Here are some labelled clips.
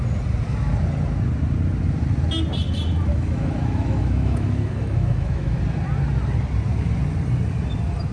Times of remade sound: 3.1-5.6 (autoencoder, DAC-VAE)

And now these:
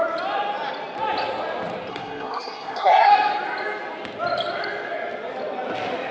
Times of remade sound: 1.9-3.1 (codec, SNAC)